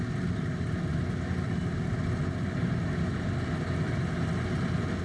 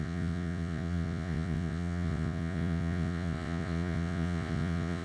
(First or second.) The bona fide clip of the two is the first